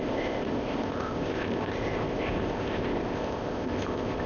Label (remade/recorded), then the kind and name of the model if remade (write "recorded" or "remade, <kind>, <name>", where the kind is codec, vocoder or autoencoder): remade, codec, ZipCodec